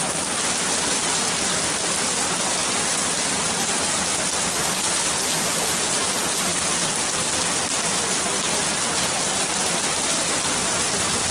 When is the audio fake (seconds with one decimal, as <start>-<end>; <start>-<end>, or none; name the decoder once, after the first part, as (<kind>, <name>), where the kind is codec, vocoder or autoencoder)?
none